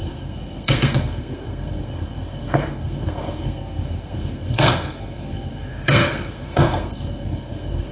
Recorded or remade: remade